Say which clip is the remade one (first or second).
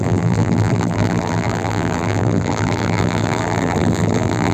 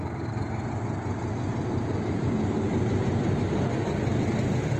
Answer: first